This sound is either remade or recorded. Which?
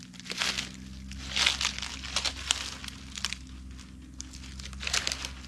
recorded